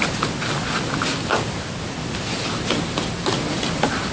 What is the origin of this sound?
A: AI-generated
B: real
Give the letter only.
B